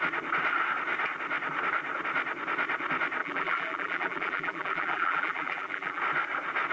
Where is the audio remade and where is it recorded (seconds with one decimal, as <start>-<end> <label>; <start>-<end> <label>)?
0.0-3.2 recorded; 3.2-6.0 remade; 6.0-6.7 recorded